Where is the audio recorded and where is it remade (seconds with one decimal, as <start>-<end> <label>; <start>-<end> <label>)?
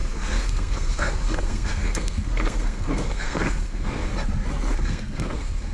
0.0-4.1 remade; 4.1-4.8 recorded; 4.8-5.7 remade